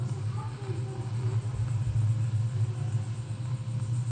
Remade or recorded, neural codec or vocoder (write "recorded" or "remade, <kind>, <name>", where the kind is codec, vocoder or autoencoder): recorded